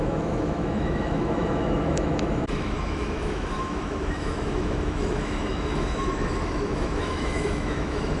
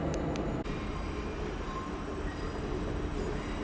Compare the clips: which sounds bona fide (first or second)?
second